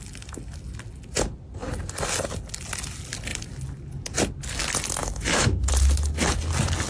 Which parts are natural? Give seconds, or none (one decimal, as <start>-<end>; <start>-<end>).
0.0-5.0; 5.7-6.9